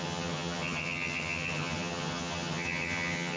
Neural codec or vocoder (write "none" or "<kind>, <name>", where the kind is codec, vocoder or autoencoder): vocoder, HiFi-GAN